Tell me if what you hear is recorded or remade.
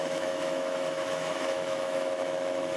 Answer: remade